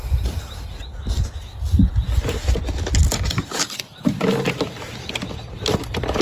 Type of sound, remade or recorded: recorded